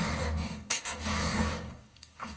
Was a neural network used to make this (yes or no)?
yes